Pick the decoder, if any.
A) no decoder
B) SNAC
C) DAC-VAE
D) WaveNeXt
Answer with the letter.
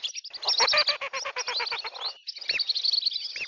A